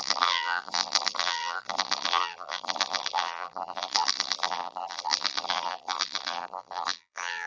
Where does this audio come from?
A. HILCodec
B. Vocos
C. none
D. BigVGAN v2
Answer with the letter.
D